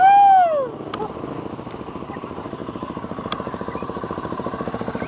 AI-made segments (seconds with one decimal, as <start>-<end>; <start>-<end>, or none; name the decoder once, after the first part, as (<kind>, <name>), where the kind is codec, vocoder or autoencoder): 2.6-5.1 (vocoder, BigVGAN v2)